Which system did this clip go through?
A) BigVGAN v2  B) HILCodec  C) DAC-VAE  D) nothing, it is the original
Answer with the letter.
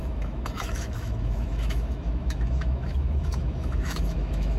C